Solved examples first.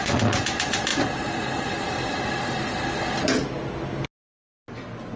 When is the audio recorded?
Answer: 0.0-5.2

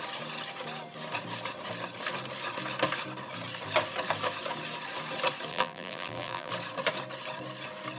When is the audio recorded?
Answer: 0.0-5.5; 6.5-8.0

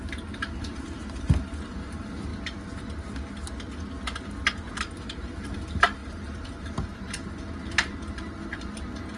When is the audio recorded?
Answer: 2.3-4.8

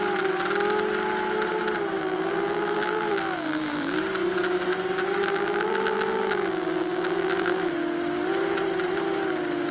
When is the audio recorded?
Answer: 0.0-2.0; 4.0-5.2; 7.7-9.7

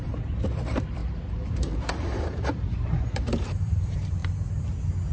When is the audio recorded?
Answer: 1.0-1.5; 4.2-5.1

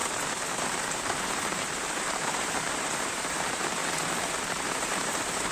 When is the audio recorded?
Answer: 3.8-4.6

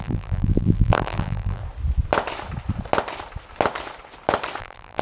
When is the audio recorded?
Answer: 1.6-4.6